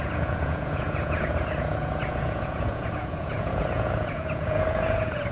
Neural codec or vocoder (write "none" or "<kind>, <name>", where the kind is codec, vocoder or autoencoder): vocoder, Vocos